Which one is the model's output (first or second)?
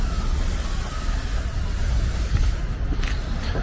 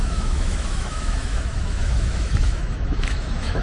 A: second